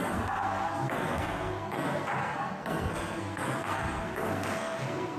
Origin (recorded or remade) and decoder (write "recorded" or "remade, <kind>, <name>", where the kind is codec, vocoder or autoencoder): remade, codec, SNAC